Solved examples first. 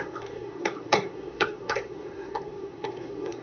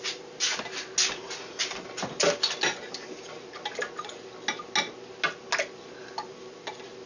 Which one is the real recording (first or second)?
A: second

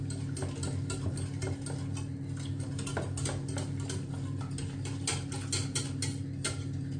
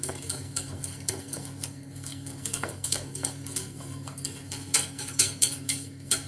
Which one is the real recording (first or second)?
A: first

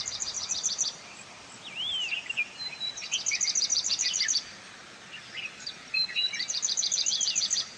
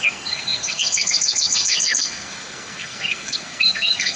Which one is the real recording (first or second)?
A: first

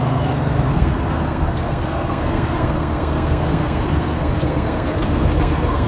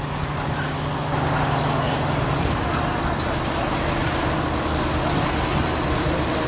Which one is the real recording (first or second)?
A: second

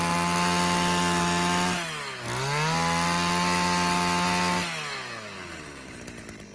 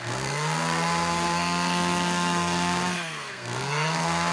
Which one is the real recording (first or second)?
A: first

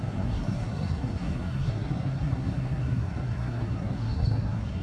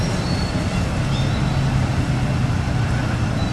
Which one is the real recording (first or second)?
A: second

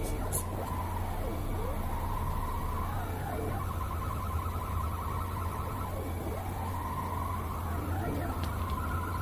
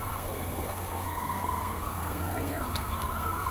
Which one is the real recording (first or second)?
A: first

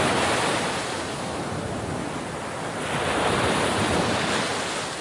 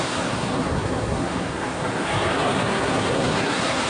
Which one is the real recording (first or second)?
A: first